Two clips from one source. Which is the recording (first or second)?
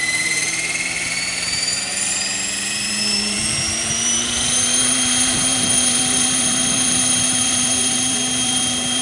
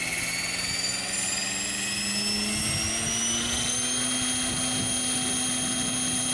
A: second